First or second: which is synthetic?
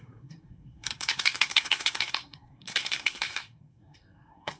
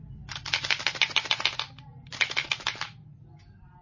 first